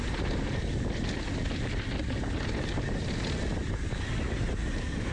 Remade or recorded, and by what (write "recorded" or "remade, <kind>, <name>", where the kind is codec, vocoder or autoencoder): recorded